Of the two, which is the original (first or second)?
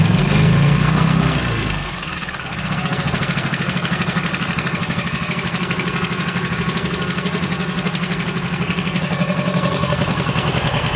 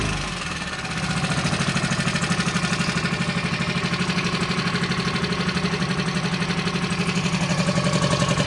second